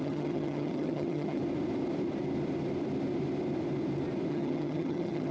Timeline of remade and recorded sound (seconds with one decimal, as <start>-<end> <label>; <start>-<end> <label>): 0.0-1.4 remade; 1.4-4.3 recorded; 4.3-5.3 remade